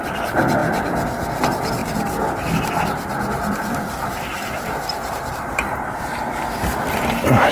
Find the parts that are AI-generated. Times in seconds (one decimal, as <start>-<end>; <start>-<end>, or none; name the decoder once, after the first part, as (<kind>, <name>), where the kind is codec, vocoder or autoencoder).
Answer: 0.0-7.5 (vocoder, BigVGAN v2)